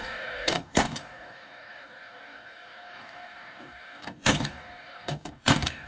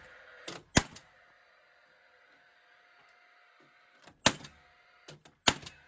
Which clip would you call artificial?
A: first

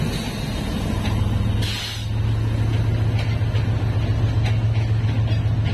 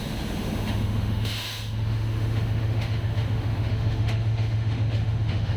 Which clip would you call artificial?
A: second